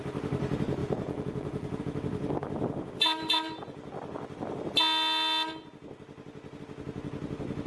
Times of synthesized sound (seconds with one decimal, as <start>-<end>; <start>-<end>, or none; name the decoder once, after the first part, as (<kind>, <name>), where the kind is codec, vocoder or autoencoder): 0.8-1.8 (vocoder, Vocos)